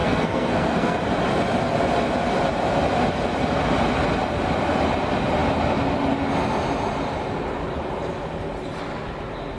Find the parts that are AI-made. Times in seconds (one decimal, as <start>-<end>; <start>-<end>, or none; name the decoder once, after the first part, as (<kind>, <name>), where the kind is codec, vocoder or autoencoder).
0.0-1.0 (codec, SNAC)